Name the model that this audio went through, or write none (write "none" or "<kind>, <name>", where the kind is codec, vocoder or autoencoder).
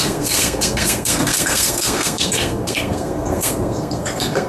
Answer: codec, SNAC